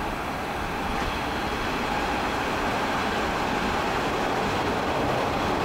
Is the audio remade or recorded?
recorded